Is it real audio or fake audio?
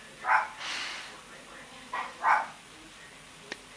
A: real